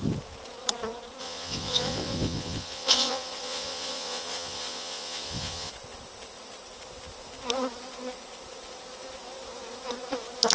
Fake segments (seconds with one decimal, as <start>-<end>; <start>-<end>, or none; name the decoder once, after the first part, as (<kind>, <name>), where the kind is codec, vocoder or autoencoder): 1.2-5.7 (vocoder, Vocos)